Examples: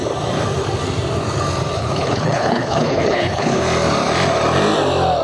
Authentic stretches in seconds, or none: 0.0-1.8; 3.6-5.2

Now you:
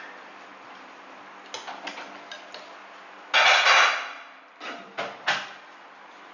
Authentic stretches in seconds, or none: 0.0-6.3

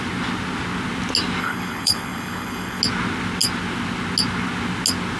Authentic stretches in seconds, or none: 0.0-1.4; 2.8-5.2

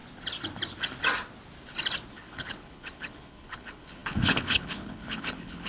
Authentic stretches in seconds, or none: 0.0-2.1

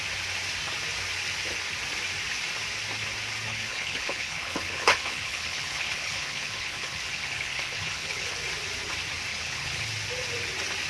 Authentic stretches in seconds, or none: 0.0-3.5; 8.4-9.3; 9.9-10.9

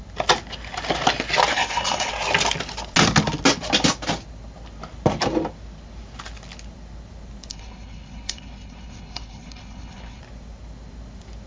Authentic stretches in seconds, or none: 0.0-1.5; 2.1-7.5; 10.2-11.5

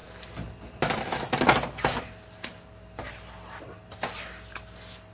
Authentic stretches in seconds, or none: 0.0-5.1

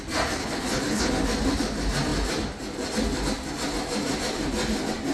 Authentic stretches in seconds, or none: 0.0-0.4; 1.1-5.1